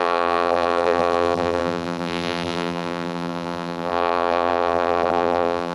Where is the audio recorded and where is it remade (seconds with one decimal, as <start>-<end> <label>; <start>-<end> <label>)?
0.0-5.7 remade